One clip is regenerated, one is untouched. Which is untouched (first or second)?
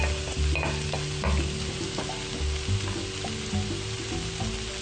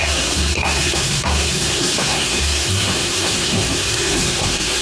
first